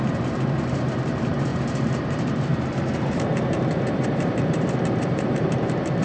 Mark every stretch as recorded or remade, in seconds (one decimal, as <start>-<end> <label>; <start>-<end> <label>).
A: 0.0-6.0 remade